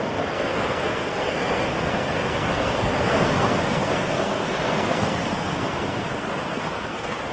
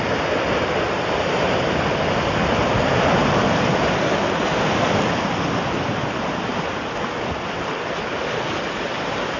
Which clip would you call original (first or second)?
second